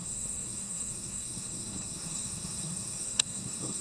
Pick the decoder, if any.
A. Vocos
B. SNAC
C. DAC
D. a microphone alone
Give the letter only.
B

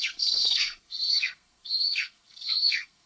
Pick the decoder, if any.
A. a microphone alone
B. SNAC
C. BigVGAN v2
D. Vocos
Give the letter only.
B